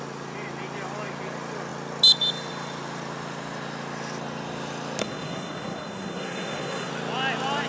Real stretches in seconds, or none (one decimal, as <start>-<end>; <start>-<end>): 0.0-5.0; 6.9-7.7